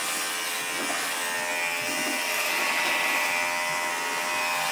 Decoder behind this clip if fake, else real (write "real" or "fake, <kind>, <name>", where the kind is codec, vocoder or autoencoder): real